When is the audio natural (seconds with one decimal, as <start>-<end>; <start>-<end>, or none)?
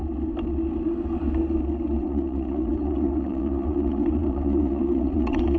0.0-2.0